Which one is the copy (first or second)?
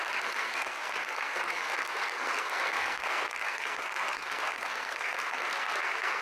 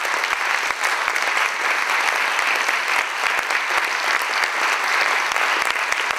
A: first